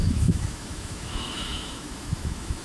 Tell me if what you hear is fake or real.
fake